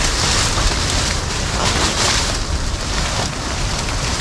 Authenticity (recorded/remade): remade